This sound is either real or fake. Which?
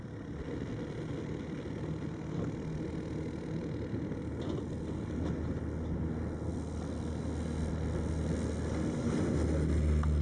real